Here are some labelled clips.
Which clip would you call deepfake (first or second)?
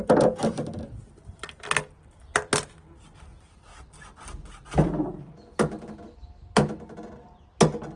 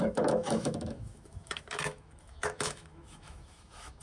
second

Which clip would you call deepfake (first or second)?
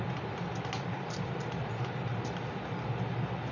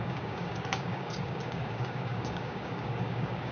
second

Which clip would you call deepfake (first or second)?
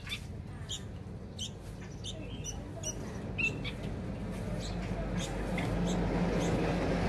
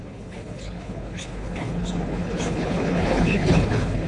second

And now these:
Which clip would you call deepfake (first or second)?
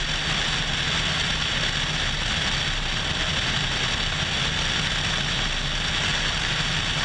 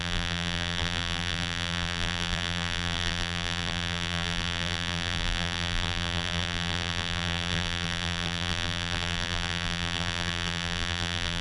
second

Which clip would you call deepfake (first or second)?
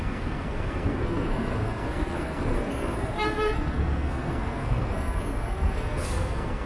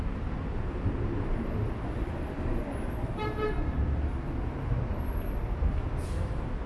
first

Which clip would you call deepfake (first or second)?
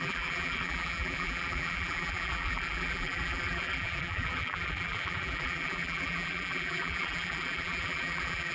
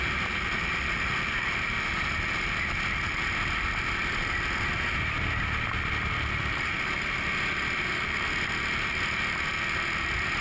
first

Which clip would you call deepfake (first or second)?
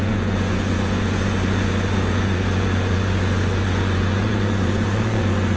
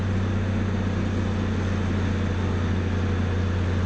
first